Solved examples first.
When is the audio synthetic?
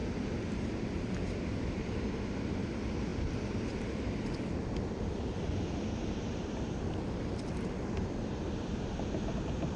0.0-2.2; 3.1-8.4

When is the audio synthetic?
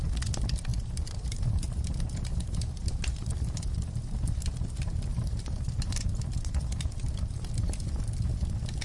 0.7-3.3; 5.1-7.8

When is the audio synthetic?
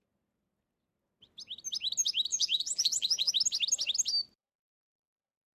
2.3-3.3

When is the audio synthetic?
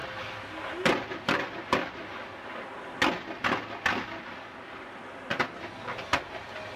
none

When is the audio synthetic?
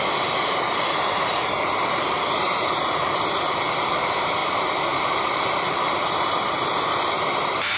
0.0-7.8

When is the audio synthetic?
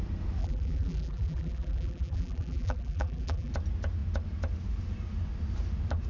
0.4-3.5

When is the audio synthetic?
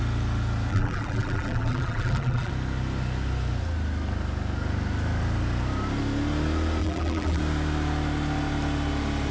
0.7-2.5; 6.8-7.4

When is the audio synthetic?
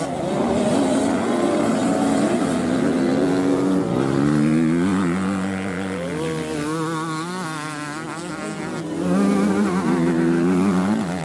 0.4-1.3; 1.8-3.1